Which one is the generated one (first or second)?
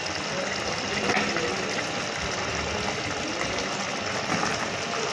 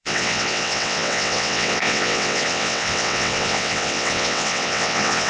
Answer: second